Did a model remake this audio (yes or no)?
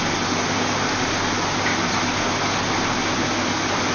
no